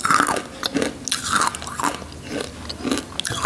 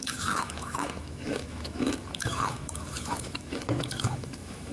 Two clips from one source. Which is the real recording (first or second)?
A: first